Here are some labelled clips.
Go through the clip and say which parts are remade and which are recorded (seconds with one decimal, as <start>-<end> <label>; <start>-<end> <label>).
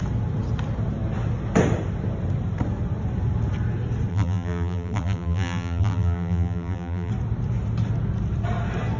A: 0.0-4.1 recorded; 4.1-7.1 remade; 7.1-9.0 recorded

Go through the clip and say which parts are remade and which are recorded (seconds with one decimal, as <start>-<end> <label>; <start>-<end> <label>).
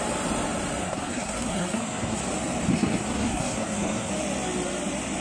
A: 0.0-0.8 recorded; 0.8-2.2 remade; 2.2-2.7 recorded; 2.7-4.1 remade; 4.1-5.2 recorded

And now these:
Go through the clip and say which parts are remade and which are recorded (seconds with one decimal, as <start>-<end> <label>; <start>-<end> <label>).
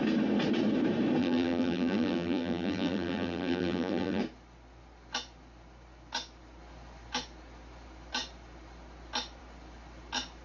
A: 0.0-1.2 recorded; 1.2-4.2 remade; 4.2-10.4 recorded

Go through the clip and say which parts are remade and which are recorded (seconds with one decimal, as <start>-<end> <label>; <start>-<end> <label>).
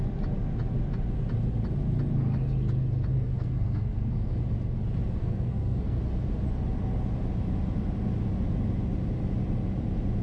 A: 0.0-3.1 recorded; 3.1-4.4 remade; 4.4-5.2 recorded; 5.2-6.0 remade; 6.0-10.2 recorded